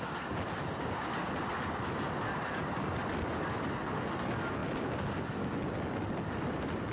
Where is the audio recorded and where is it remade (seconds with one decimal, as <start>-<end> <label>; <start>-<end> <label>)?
0.0-6.9 recorded